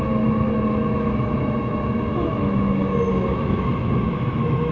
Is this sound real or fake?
fake